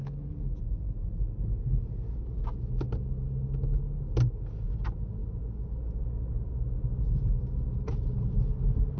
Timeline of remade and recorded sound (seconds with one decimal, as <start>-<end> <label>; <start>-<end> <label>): 0.0-9.0 recorded